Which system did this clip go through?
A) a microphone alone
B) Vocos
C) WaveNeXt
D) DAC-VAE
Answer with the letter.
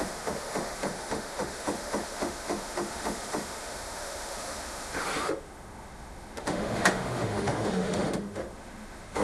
D